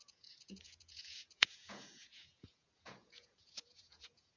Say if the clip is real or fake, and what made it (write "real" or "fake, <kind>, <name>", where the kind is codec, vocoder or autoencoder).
fake, vocoder, Vocos